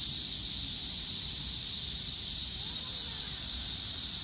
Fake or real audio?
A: fake